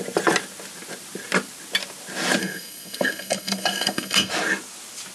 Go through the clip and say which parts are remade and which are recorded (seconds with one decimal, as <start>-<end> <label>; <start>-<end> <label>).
0.0-2.4 recorded; 2.4-4.3 remade; 4.3-5.1 recorded